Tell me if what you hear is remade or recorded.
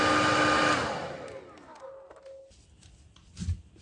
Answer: recorded